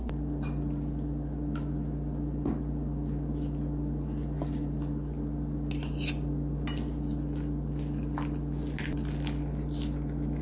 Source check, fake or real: real